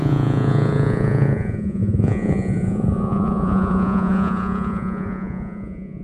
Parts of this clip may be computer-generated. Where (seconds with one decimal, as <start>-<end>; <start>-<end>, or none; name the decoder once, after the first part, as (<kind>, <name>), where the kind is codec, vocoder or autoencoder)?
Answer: 0.0-6.0 (vocoder, Vocos)

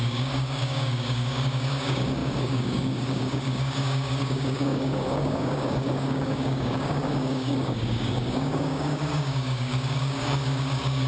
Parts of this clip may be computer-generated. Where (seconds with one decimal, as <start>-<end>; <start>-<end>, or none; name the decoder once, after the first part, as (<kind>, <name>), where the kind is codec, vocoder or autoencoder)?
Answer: 0.0-11.1 (codec, DAC)